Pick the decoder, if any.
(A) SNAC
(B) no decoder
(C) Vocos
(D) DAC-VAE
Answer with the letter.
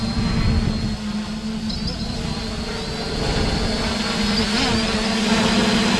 B